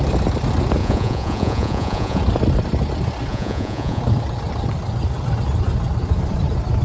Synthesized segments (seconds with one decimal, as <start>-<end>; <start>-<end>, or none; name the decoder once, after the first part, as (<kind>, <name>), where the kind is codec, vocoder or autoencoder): 0.8-2.2 (vocoder, Vocos); 3.3-4.0